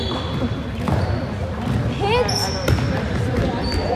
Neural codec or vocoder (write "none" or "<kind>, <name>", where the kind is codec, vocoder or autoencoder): none